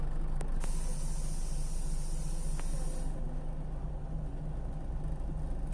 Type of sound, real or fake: real